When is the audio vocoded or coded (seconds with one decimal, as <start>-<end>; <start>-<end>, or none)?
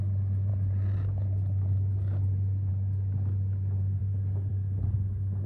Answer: none